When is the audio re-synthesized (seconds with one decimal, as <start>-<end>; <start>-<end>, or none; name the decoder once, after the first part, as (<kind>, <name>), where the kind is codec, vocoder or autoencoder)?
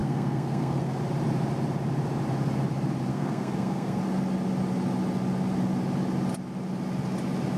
0.0-1.0 (codec, SNAC); 3.1-4.0